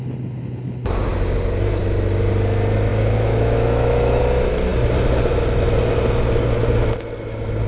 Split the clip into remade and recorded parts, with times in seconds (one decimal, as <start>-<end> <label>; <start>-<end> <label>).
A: 0.0-2.9 recorded; 2.9-4.2 remade; 4.2-7.7 recorded